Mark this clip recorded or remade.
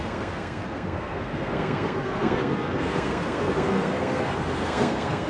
remade